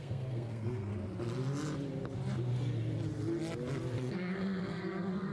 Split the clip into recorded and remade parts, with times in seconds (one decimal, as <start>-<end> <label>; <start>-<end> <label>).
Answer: 0.0-0.9 remade; 0.9-4.1 recorded; 4.1-5.3 remade